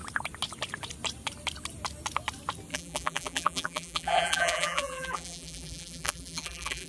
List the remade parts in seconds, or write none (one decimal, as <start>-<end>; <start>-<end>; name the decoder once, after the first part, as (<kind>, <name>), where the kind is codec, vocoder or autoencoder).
2.7-6.9 (vocoder, BigVGAN v2)